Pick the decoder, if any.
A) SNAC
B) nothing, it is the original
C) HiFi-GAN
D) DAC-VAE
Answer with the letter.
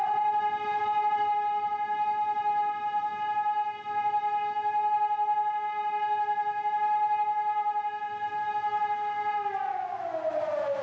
B